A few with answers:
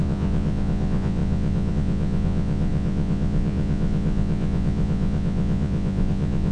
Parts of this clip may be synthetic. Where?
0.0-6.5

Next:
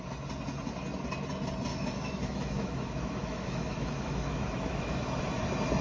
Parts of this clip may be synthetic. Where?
1.7-5.2

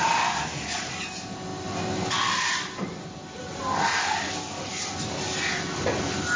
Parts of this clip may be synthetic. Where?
none